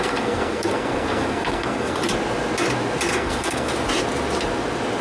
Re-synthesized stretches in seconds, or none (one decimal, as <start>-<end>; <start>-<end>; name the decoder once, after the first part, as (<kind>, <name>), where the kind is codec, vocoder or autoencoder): 0.0-2.0 (codec, SNAC); 3.1-3.7